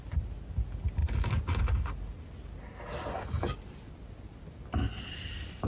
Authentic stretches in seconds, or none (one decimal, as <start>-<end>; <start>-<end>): 0.0-5.7